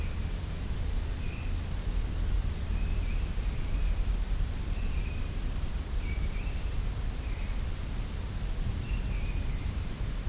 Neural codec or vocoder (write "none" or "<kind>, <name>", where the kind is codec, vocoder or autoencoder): vocoder, BigVGAN v2